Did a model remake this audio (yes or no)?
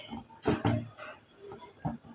no